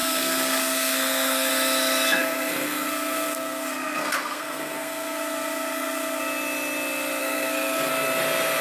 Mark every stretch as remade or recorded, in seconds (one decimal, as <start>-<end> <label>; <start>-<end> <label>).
0.0-1.5 remade; 1.5-2.2 recorded; 2.2-6.2 remade; 6.2-7.2 recorded; 7.2-7.9 remade; 7.9-8.6 recorded

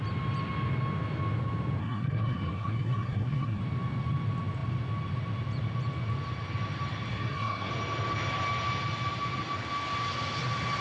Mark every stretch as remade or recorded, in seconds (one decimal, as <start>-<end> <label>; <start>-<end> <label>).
0.0-1.8 recorded; 1.8-3.6 remade; 3.6-7.1 recorded; 7.1-7.7 remade; 7.7-10.8 recorded